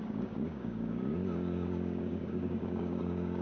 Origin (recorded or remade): remade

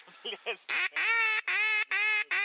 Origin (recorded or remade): recorded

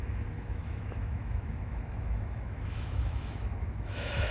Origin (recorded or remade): remade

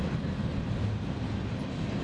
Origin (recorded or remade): recorded